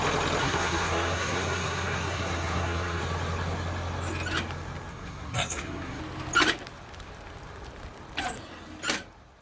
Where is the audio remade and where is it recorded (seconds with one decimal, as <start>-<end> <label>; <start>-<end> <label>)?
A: 0.0-0.4 recorded; 0.4-3.0 remade; 3.0-4.9 recorded; 4.9-6.0 remade; 6.0-9.4 recorded

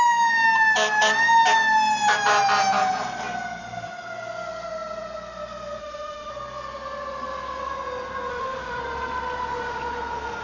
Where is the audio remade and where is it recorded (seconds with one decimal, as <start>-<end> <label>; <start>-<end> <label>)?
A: 0.0-5.8 recorded; 5.8-6.3 remade; 6.3-8.3 recorded; 8.3-8.8 remade; 8.8-10.4 recorded

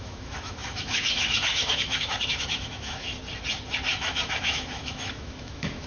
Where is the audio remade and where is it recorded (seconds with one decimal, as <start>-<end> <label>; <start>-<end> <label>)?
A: 0.0-3.1 remade; 3.1-4.0 recorded; 4.0-5.9 remade

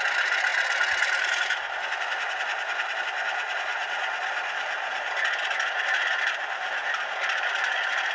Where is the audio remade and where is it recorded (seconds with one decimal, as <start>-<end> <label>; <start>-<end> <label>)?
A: 0.0-8.1 recorded

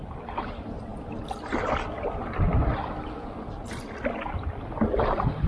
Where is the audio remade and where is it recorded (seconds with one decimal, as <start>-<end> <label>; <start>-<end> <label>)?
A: 0.0-5.5 recorded

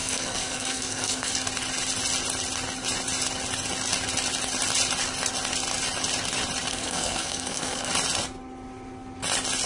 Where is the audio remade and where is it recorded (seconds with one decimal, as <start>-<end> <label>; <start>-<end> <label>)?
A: 0.0-1.3 remade; 1.3-6.7 recorded; 6.7-7.9 remade; 7.9-9.7 recorded

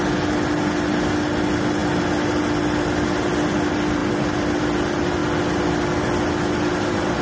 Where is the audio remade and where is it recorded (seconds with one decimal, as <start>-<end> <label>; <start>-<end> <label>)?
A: 0.0-7.2 recorded